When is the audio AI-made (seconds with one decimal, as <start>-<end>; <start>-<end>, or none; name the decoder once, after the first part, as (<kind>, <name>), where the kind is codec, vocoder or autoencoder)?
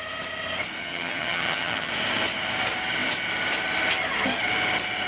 0.8-1.9 (vocoder, HiFi-GAN)